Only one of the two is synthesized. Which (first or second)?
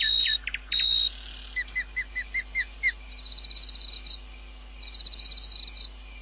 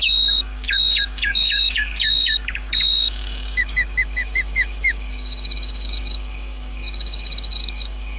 second